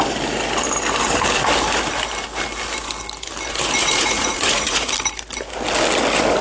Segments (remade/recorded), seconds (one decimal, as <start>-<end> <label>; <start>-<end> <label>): 0.0-3.8 recorded; 3.8-4.9 remade; 4.9-6.4 recorded